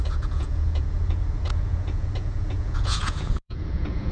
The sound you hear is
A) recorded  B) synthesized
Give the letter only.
B